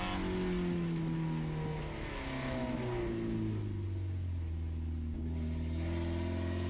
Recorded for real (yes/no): yes